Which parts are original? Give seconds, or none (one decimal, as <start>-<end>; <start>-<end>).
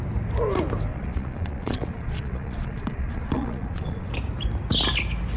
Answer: 0.0-0.9; 4.1-5.4